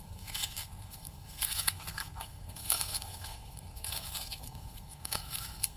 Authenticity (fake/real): fake